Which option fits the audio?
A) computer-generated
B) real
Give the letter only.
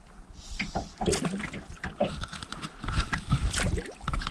B